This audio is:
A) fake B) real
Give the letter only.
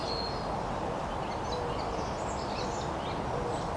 B